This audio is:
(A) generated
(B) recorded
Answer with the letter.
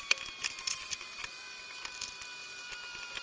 B